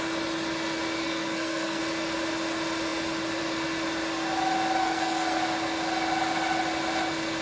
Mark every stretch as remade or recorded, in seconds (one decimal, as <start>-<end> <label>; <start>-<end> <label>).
0.0-1.0 recorded; 1.0-1.8 remade; 1.8-4.8 recorded; 4.8-5.4 remade; 5.4-7.4 recorded